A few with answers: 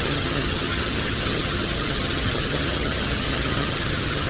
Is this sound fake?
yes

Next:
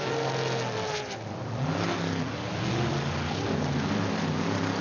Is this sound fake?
no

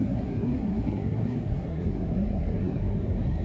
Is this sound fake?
yes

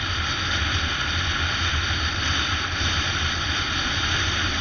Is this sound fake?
no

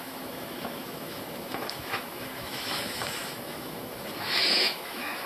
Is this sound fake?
yes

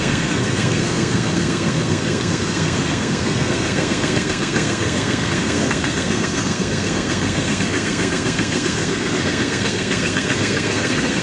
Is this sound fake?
yes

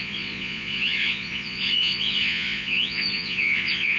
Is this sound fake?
yes